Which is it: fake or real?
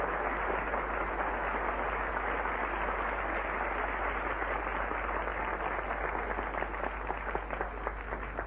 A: real